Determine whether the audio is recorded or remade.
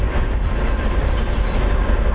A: remade